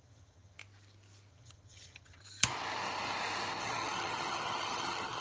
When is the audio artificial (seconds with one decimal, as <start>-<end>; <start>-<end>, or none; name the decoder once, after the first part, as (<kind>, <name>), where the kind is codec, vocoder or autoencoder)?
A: 0.0-0.6 (vocoder, HiFi-GAN); 1.3-2.2; 3.6-5.2

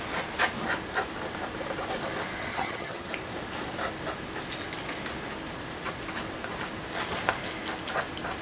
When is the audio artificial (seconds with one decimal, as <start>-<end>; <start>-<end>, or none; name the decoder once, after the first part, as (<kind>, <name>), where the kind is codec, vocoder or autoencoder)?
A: 2.5-3.1 (vocoder, HiFi-GAN)